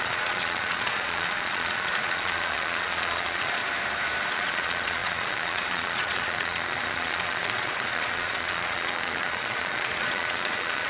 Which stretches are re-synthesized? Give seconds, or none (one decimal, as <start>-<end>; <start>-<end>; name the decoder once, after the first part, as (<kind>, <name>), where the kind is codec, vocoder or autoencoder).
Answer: 0.0-3.6 (vocoder, Vocos); 4.3-10.9